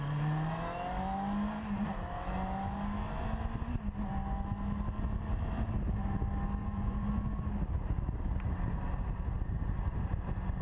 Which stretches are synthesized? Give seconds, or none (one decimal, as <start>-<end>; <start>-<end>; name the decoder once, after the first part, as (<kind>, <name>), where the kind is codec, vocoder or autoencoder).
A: 6.6-7.3 (vocoder, Vocos)